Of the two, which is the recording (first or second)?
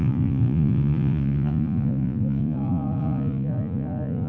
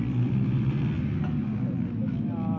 second